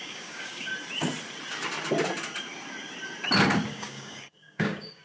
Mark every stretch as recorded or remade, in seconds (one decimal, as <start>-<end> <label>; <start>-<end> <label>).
0.0-0.7 remade; 0.7-3.7 recorded; 3.7-5.0 remade